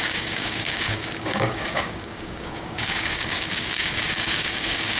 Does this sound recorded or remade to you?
remade